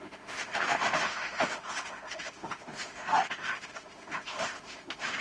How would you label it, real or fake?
fake